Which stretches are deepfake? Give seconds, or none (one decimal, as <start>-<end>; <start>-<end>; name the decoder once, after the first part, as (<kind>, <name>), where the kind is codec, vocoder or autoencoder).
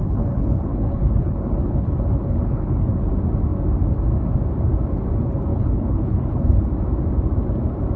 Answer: 0.0-3.1 (codec, HILCodec); 5.5-6.4